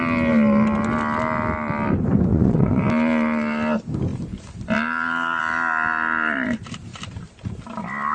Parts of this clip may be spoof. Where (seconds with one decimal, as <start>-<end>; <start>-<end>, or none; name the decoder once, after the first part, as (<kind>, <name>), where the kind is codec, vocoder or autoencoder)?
2.3-2.8 (vocoder, WaveNeXt)